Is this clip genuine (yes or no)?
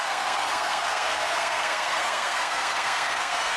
no